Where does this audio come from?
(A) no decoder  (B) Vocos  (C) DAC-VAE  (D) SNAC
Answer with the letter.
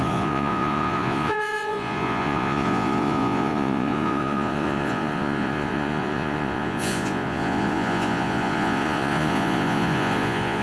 B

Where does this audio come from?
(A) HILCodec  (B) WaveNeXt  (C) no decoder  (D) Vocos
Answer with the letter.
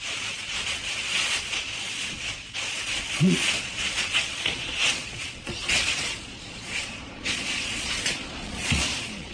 D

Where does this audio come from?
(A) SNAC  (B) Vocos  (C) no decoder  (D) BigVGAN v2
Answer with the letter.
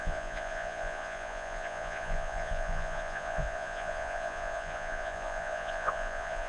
B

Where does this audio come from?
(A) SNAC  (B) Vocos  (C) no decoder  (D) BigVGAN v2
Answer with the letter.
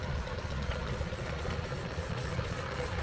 B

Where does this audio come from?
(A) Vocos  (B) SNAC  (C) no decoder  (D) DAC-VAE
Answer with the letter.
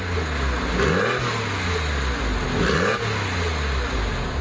C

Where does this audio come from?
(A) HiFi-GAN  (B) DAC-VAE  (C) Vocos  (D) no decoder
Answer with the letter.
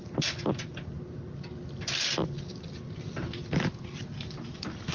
D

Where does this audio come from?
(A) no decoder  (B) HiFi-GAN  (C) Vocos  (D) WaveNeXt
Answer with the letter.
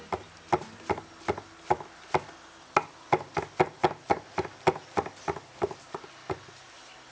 A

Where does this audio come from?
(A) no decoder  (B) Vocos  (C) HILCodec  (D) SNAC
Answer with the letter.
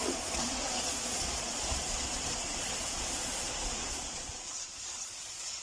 B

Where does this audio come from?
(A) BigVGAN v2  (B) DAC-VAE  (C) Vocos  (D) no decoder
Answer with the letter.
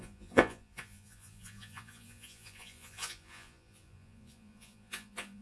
C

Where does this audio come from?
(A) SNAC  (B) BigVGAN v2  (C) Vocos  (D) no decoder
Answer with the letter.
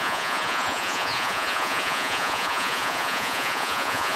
C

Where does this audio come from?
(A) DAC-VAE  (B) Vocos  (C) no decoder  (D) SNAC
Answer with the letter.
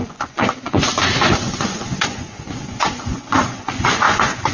B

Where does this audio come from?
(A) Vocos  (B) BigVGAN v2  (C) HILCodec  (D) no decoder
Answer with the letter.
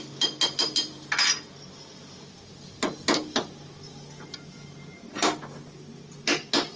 D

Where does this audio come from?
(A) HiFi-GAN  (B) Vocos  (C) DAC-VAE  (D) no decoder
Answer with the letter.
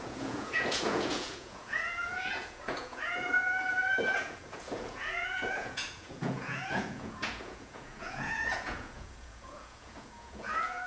B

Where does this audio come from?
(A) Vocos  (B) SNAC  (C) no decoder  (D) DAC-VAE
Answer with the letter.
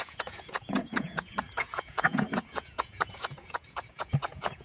A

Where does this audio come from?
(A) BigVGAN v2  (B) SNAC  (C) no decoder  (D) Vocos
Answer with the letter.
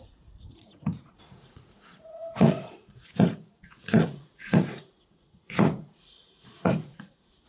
D